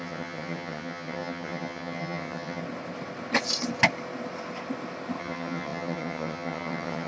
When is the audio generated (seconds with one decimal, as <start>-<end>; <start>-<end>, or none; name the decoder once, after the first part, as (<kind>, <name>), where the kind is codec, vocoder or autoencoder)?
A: 0.0-2.6 (vocoder, HiFi-GAN); 5.2-7.1